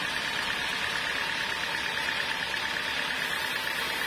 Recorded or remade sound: recorded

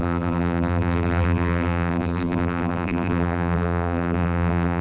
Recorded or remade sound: remade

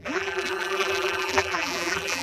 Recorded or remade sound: remade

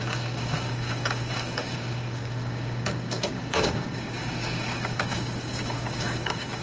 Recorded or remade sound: remade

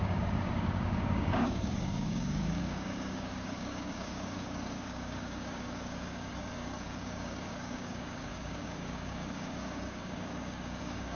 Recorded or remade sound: remade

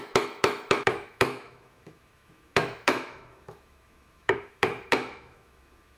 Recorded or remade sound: remade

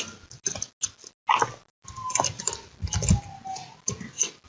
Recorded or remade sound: recorded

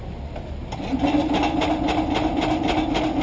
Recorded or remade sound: recorded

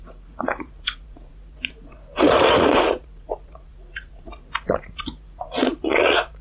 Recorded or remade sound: remade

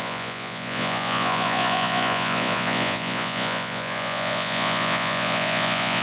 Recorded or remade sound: remade